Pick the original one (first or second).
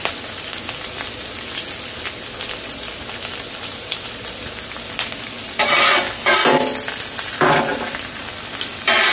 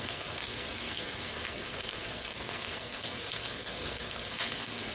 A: first